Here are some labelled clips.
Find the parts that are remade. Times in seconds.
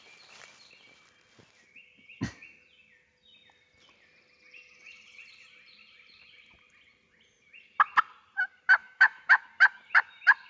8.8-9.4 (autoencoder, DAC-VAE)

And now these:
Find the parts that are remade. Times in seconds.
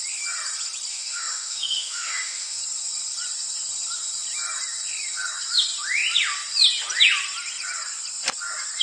0.9-2.6 (autoencoder, DAC-VAE)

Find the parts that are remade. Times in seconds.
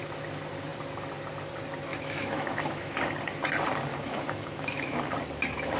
1.9-3.0 (autoencoder, DAC-VAE); 3.9-5.0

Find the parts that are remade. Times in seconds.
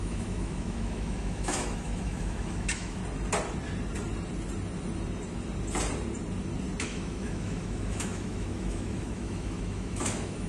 0.0-3.0 (autoencoder, DAC-VAE); 6.8-10.5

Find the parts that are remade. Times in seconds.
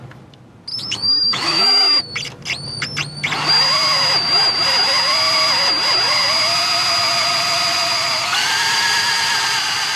0.7-2.0 (autoencoder, DAC-VAE)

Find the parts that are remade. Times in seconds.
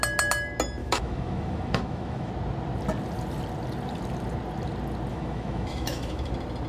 0.8-2.3 (autoencoder, DAC-VAE); 5.1-6.3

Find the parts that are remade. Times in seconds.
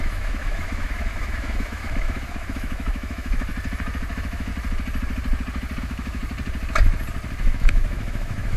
0.0-3.5 (autoencoder, DAC-VAE); 4.1-4.5; 5.8-6.2; 7.4-8.6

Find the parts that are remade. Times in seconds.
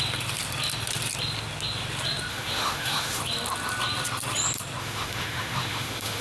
2.3-3.2 (autoencoder, DAC-VAE); 4.8-6.2